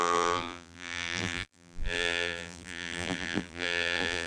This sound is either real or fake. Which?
fake